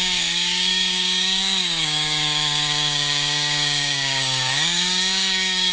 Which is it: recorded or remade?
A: remade